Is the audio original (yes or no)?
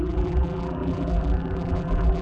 no